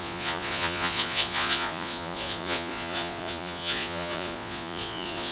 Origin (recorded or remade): remade